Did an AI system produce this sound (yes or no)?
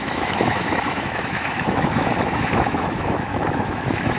yes